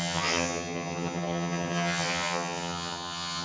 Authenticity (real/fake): fake